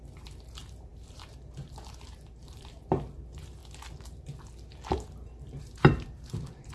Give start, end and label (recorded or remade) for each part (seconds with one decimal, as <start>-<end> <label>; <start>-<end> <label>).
0.0-3.6 remade; 3.6-5.6 recorded; 5.6-6.7 remade